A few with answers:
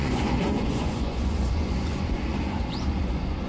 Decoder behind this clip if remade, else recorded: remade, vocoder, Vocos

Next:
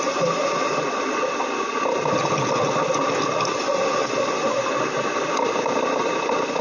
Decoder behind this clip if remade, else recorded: recorded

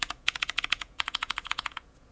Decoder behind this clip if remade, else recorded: remade, vocoder, Vocos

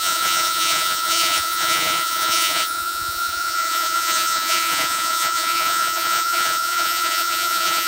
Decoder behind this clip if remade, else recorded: remade, vocoder, Vocos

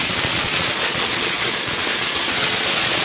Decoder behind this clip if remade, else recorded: remade, vocoder, Vocos